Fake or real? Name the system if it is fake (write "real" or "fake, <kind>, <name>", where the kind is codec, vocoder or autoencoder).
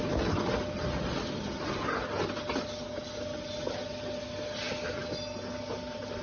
real